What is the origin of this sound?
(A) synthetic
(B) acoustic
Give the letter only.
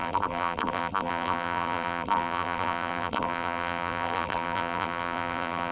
A